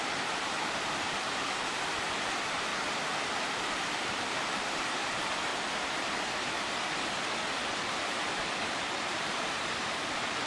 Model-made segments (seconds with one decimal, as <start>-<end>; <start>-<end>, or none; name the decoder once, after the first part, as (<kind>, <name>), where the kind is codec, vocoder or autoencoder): 0.0-2.7 (vocoder, BigVGAN v2); 3.4-5.5; 7.7-10.5